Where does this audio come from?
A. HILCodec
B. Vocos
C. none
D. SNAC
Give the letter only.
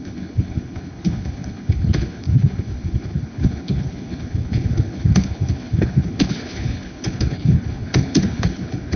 A